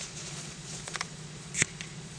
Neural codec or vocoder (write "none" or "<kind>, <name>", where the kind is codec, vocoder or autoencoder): vocoder, Vocos